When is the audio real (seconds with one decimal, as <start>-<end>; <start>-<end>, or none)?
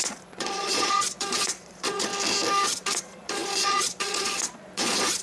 2.1-3.0